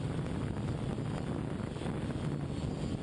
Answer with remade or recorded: recorded